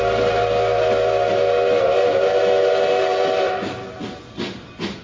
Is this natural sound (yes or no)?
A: yes